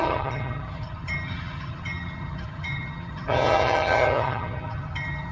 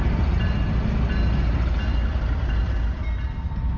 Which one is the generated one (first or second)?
first